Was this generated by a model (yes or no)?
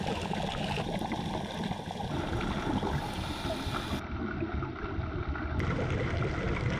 no